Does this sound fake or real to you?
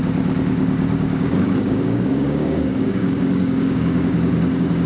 fake